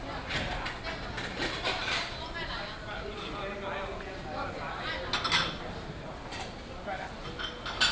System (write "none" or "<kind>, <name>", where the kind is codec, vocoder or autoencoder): none